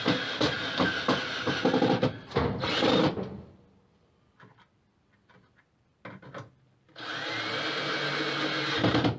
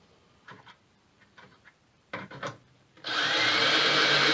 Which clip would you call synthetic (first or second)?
second